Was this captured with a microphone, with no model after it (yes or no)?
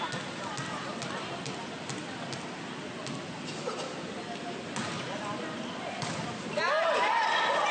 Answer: yes